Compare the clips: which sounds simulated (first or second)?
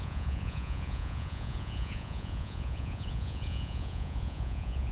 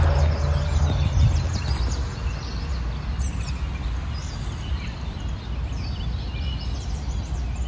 first